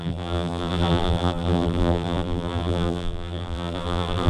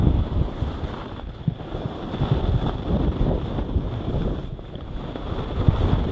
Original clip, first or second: second